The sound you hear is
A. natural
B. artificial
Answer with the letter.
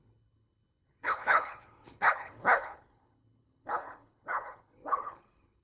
B